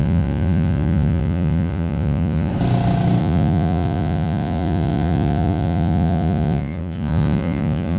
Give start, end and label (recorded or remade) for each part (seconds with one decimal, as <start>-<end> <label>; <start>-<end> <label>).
0.0-2.5 remade; 2.5-3.2 recorded; 3.2-8.0 remade